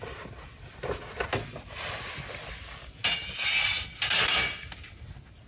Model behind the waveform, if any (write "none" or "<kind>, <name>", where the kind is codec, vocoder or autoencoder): none